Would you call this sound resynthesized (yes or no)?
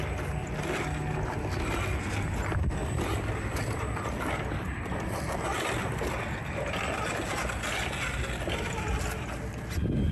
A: no